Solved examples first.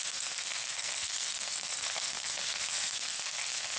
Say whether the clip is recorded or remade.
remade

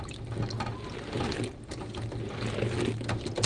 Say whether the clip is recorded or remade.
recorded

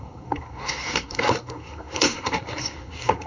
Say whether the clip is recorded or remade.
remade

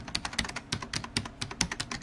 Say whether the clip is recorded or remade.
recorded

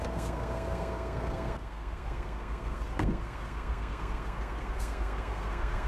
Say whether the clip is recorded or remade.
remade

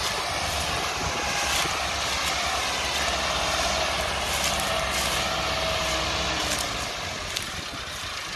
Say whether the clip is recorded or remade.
recorded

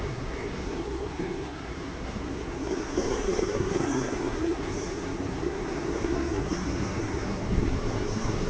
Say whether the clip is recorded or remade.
remade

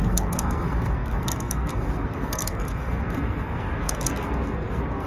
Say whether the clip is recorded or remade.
remade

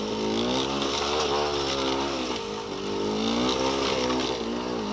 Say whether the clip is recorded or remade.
recorded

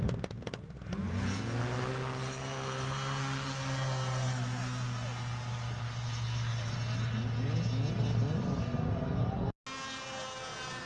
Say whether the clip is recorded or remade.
recorded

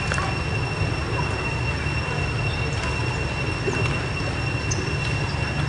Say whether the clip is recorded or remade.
recorded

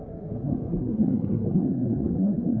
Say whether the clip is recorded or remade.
remade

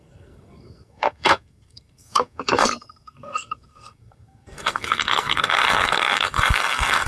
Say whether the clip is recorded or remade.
remade